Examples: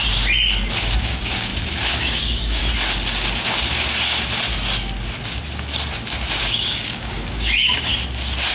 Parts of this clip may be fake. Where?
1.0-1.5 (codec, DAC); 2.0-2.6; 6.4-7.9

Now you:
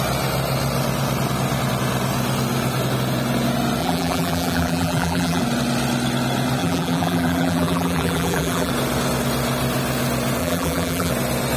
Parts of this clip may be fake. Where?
3.8-5.4 (vocoder, BigVGAN v2); 6.6-8.7; 10.4-11.1

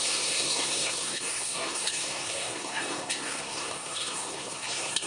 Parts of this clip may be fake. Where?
0.0-5.1 (codec, SNAC)